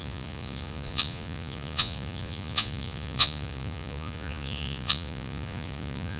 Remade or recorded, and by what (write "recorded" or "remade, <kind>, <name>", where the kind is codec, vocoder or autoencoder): remade, vocoder, Vocos